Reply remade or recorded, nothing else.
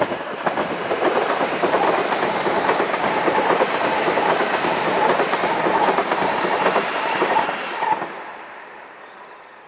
remade